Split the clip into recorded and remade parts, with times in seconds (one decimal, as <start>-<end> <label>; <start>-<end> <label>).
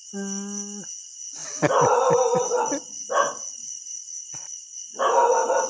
0.0-5.7 recorded